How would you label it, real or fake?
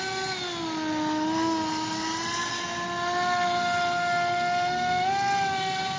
real